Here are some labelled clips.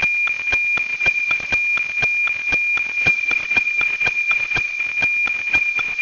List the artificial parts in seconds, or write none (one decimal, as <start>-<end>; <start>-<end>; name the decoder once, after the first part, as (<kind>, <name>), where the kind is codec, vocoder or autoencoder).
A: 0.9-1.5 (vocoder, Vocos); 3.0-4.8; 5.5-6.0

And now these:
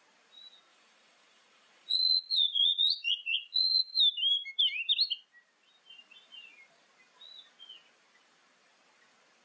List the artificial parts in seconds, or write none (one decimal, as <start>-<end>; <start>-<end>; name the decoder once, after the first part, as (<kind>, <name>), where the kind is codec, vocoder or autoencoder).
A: 0.7-4.0 (vocoder, Vocos)

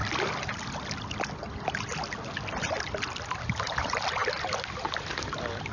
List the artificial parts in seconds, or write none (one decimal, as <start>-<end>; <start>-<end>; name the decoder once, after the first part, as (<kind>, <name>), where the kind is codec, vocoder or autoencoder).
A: none

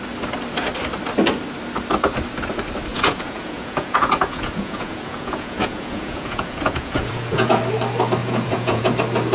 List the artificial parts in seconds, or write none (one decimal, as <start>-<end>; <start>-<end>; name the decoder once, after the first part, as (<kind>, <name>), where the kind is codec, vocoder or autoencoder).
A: 2.9-7.6 (vocoder, Vocos); 8.2-8.9